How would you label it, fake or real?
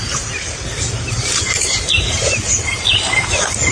fake